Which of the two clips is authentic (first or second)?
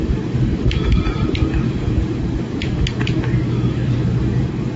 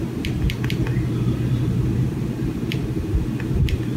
second